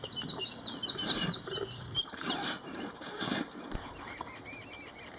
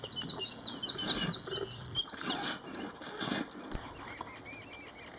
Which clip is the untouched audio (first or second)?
second